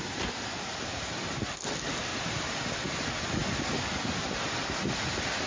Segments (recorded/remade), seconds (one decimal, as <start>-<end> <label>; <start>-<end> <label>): 0.0-0.5 recorded; 0.5-1.2 remade; 1.2-2.1 recorded; 2.1-2.6 remade; 2.6-5.5 recorded